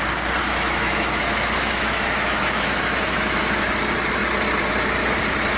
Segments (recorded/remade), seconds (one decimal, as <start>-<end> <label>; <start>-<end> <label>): 0.0-0.4 recorded; 0.4-3.7 remade; 3.7-5.6 recorded